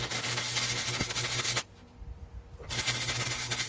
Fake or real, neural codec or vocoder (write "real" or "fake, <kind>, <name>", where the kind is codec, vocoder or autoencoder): real